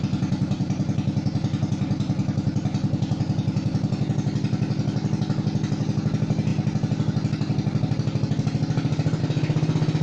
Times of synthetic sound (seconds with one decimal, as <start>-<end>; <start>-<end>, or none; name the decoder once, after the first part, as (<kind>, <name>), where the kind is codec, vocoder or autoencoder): none

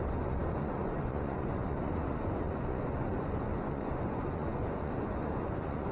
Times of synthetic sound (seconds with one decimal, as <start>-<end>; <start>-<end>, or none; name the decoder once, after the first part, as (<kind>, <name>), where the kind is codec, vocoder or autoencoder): 0.0-5.9 (vocoder, Vocos)